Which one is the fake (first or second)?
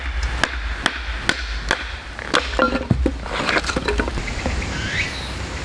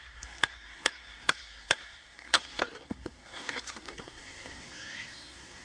second